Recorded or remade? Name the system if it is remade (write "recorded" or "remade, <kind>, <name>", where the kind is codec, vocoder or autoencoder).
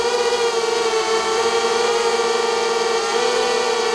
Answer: remade, vocoder, BigVGAN v2